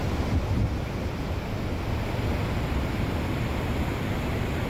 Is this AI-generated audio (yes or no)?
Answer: no